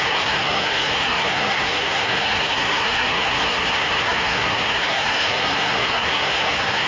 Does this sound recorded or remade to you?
remade